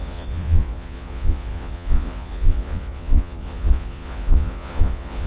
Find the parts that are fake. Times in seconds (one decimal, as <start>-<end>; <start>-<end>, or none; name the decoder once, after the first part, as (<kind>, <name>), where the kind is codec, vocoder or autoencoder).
0.0-5.3 (vocoder, Vocos)